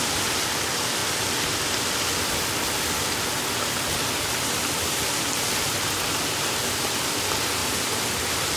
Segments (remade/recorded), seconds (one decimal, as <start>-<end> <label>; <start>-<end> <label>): 0.0-8.6 recorded